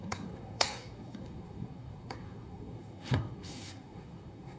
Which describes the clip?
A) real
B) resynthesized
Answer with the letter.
B